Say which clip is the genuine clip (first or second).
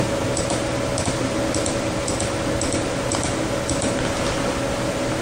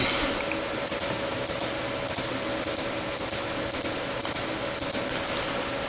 second